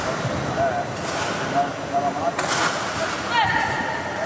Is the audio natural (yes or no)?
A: yes